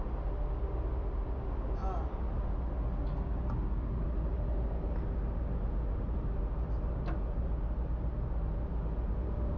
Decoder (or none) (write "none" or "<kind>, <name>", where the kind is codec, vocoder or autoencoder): none